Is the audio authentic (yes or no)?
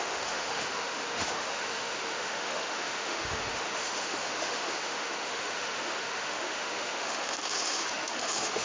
no